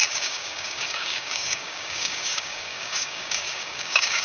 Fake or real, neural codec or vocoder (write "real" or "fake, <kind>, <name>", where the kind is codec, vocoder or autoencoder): fake, codec, DAC